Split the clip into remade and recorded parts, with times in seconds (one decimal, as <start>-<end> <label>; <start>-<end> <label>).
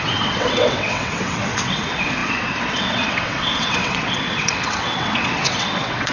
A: 0.0-6.1 remade